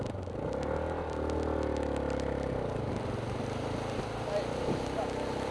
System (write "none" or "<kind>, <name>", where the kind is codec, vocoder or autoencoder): none